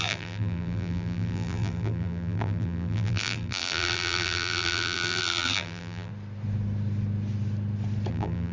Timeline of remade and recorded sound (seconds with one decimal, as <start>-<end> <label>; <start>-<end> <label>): 0.0-6.1 remade; 6.1-8.1 recorded; 8.1-8.5 remade